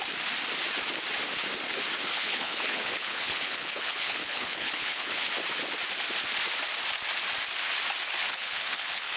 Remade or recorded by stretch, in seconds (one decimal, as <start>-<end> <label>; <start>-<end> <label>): 0.0-2.1 recorded; 2.1-5.3 remade; 5.3-8.2 recorded; 8.2-9.2 remade

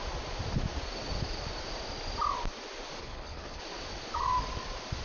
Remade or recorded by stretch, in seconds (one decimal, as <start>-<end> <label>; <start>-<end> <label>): 0.0-3.0 recorded; 3.0-3.6 remade; 3.6-5.0 recorded

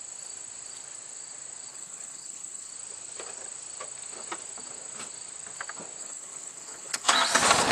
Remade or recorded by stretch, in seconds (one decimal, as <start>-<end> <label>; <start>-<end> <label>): 0.0-1.7 recorded; 1.7-2.7 remade; 2.7-6.0 recorded; 6.0-7.1 remade; 7.1-7.7 recorded

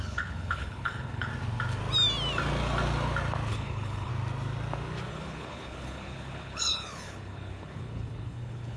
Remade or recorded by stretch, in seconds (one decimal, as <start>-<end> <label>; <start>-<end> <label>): 0.0-1.3 remade; 1.3-3.5 recorded; 3.5-4.1 remade; 4.1-5.1 recorded; 5.1-8.8 remade